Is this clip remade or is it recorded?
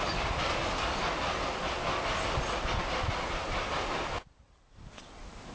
recorded